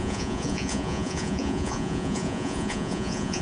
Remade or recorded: remade